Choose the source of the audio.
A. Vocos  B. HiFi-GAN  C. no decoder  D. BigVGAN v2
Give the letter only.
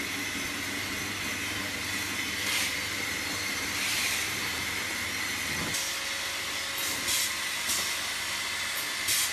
C